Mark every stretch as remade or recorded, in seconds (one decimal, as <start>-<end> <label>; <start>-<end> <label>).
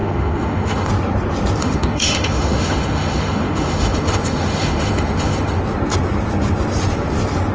0.0-0.9 remade; 0.9-1.6 recorded; 1.6-5.6 remade; 5.6-7.5 recorded